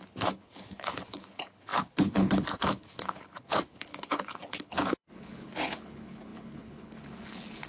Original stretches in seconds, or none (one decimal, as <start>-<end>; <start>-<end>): none